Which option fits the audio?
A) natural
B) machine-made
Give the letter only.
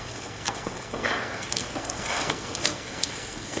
B